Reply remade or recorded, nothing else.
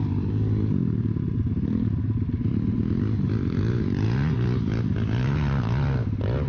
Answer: recorded